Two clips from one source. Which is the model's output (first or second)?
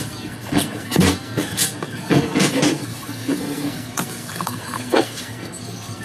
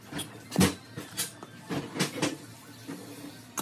first